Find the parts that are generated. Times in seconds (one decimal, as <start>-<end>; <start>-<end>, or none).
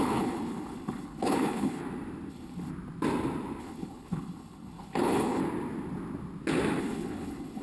0.0-1.8; 2.3-2.7; 3.6-5.4; 6.8-7.6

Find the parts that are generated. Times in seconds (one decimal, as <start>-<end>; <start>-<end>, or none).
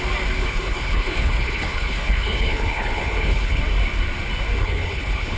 0.4-3.6; 4.6-5.4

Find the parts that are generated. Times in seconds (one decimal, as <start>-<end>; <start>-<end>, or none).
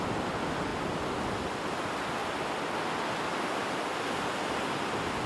none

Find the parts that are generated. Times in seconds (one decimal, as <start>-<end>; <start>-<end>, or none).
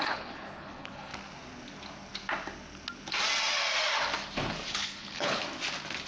0.0-1.1; 4.7-5.4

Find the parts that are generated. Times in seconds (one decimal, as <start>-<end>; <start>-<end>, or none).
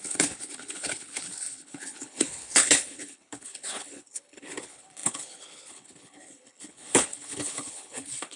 0.0-8.4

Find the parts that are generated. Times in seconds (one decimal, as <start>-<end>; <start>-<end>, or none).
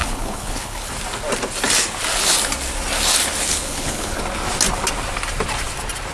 0.0-0.9; 3.5-4.2